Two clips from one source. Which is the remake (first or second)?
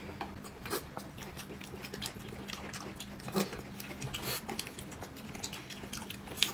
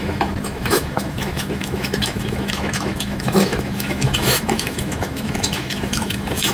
second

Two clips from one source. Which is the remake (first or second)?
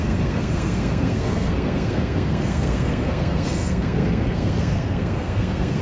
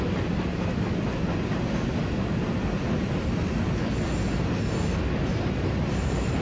first